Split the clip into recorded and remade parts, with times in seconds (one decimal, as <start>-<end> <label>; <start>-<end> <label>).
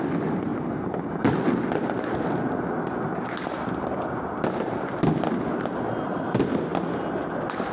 0.0-7.7 recorded